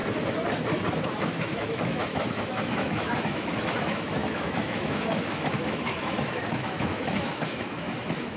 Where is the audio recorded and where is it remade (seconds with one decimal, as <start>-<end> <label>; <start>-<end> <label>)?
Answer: 0.0-1.2 recorded; 1.2-8.4 remade